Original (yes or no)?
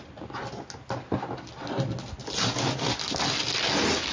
yes